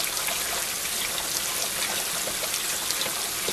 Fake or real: real